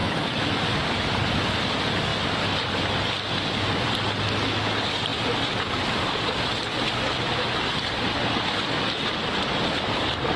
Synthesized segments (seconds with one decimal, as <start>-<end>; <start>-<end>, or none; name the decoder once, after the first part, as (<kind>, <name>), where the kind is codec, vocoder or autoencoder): 0.0-0.6 (autoencoder, DAC-VAE)